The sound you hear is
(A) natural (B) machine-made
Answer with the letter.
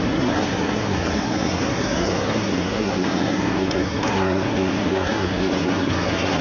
B